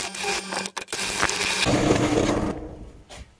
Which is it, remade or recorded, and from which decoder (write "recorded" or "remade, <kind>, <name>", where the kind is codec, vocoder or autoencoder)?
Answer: recorded